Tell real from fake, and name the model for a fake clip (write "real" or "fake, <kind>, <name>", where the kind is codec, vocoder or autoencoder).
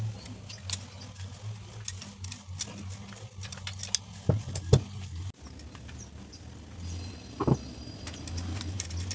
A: real